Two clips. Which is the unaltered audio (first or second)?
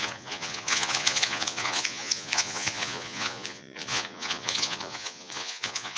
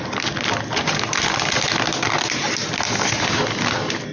second